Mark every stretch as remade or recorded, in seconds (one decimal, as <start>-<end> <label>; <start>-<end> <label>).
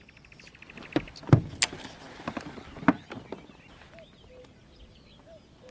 0.0-5.7 recorded